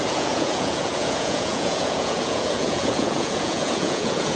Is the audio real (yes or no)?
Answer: no